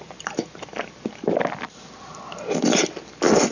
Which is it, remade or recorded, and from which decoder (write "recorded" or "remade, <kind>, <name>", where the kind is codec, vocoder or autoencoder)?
recorded